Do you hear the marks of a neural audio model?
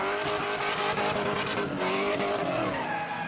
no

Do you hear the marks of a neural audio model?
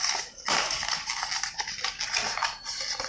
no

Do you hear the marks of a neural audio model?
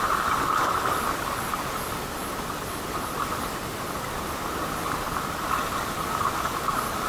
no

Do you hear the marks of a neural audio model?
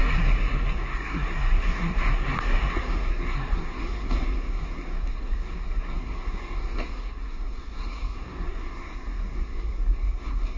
yes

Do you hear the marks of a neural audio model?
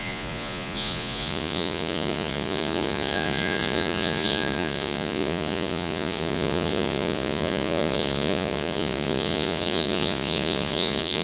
yes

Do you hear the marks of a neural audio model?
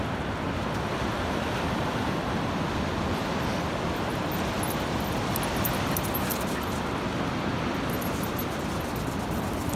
no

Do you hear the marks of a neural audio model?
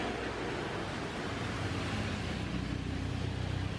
yes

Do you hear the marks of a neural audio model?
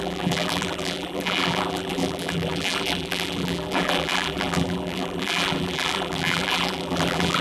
yes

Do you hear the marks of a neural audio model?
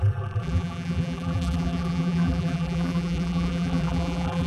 yes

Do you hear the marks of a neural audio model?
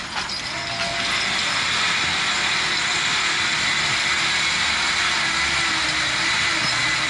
no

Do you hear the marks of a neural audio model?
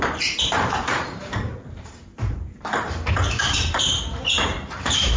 yes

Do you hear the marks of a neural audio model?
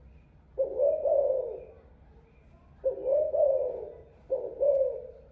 no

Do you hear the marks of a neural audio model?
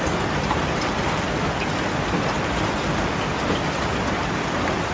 no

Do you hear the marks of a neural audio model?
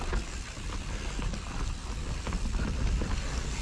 no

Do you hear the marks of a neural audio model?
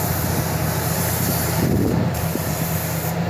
yes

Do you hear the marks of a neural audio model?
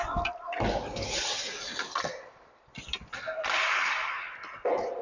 no